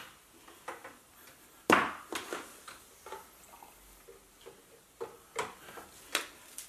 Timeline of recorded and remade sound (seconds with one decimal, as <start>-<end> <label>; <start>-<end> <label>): 0.0-6.7 recorded